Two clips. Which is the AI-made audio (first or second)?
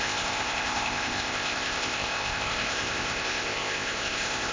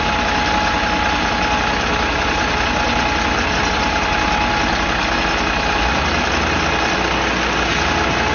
first